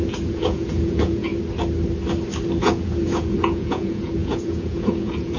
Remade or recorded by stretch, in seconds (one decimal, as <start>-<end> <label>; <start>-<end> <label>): 0.0-1.3 remade; 1.3-2.6 recorded; 2.6-5.4 remade